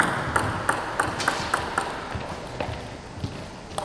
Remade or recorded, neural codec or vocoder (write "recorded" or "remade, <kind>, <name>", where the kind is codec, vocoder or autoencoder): recorded